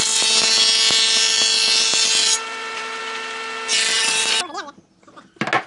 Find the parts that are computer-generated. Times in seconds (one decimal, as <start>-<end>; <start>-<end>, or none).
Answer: 2.2-3.0; 3.7-4.2